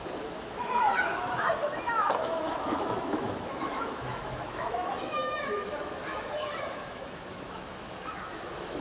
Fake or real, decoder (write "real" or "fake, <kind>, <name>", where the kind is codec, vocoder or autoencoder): fake, autoencoder, DAC-VAE